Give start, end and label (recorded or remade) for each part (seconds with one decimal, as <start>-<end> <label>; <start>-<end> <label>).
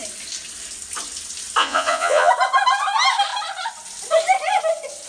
0.0-1.6 recorded; 1.6-2.3 remade; 2.3-5.1 recorded